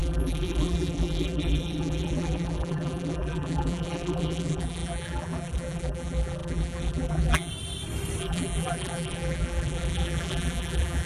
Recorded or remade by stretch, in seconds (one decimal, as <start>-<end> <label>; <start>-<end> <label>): 0.0-7.5 remade; 7.5-8.2 recorded; 8.2-11.1 remade